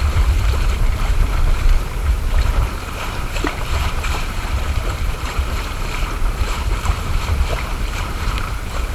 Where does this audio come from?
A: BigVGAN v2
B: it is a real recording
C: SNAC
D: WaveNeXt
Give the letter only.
A